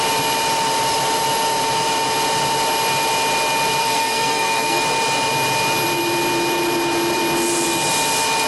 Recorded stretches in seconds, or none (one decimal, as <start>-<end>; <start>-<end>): 0.0-3.8; 4.8-8.5

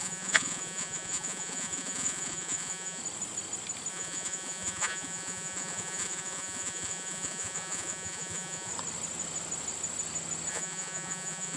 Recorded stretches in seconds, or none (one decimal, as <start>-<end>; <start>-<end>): 3.0-3.9; 8.7-10.5

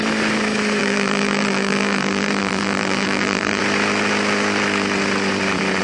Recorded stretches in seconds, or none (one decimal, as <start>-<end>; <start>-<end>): 0.0-0.8; 3.6-5.8